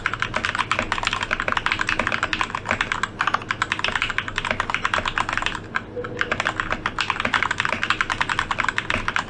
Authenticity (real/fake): real